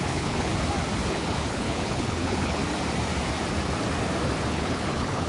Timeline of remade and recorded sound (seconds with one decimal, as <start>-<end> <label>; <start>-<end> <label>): 0.0-0.5 remade; 0.5-1.1 recorded; 1.1-2.6 remade; 2.6-4.5 recorded; 4.5-5.3 remade